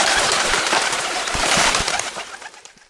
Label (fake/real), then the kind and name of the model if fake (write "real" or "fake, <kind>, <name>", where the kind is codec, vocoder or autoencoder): fake, vocoder, BigVGAN v2